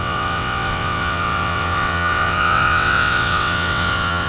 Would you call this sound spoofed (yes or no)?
yes